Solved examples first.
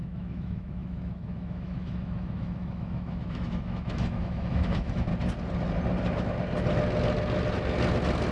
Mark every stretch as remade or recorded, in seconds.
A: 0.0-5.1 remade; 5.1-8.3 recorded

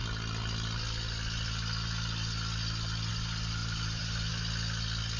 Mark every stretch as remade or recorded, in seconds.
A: 0.0-3.6 recorded; 3.6-4.3 remade; 4.3-5.2 recorded

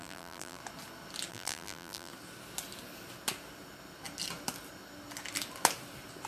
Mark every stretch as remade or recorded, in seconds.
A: 0.0-0.6 remade; 0.6-1.3 recorded; 1.3-2.1 remade; 2.1-6.3 recorded

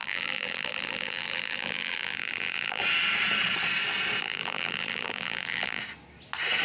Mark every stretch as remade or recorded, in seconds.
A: 0.0-2.8 remade; 2.8-4.2 recorded; 4.2-5.8 remade; 5.8-6.6 recorded

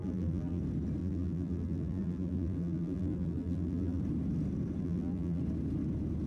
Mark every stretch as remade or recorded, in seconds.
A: 0.0-0.6 remade; 0.6-1.0 recorded; 1.0-4.0 remade; 4.0-4.8 recorded; 4.8-5.4 remade; 5.4-6.3 recorded

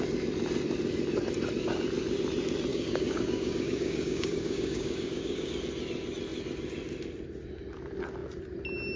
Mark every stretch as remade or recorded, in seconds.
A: 0.0-2.7 recorded; 2.7-5.5 remade; 5.5-9.0 recorded

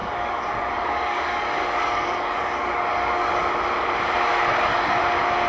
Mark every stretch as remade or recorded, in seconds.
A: 0.0-3.3 remade; 3.3-4.3 recorded; 4.3-5.0 remade; 5.0-5.5 recorded

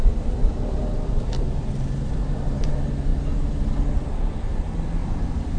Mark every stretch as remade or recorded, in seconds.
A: 0.0-0.8 recorded; 0.8-2.7 remade; 2.7-5.0 recorded; 5.0-5.6 remade